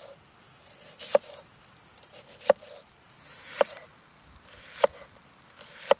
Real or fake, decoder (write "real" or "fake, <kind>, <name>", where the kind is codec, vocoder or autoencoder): real